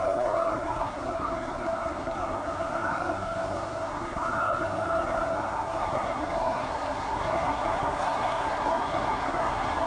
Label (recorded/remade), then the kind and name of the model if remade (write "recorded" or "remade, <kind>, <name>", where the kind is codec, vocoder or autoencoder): remade, codec, SNAC